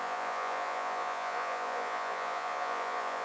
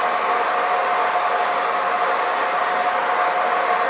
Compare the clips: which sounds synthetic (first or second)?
first